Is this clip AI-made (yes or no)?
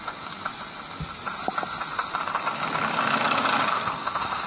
no